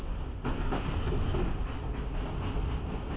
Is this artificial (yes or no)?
no